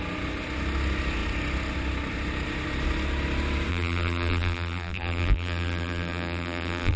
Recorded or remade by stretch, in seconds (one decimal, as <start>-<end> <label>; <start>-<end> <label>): 0.0-3.7 recorded; 3.7-7.0 remade